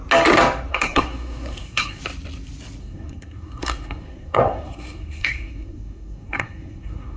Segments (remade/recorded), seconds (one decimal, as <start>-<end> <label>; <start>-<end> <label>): 0.0-0.7 recorded; 0.7-2.0 remade; 2.0-2.8 recorded; 2.8-7.2 remade